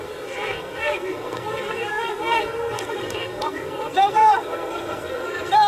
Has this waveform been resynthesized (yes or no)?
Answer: yes